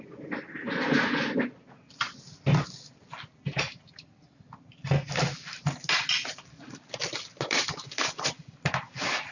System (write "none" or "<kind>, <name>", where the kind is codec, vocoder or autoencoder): none